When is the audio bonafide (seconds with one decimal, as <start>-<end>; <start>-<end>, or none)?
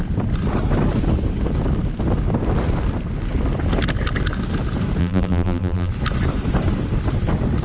0.0-5.0; 5.9-7.6